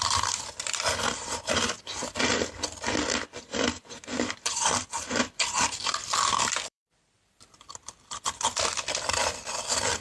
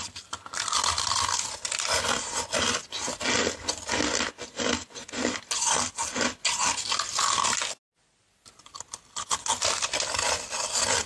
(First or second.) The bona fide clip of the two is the second